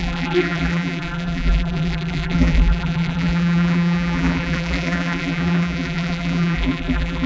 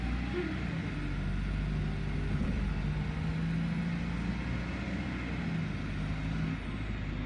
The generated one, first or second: first